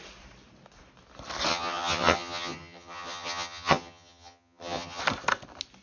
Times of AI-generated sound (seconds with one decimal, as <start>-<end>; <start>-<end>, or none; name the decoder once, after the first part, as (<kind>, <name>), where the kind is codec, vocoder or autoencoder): 1.5-5.0 (vocoder, HiFi-GAN)